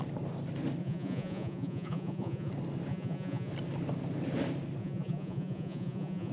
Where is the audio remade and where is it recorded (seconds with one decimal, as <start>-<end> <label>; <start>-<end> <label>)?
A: 0.0-0.8 recorded; 0.8-2.5 remade; 2.5-2.9 recorded; 2.9-3.5 remade; 3.5-4.8 recorded; 4.8-6.3 remade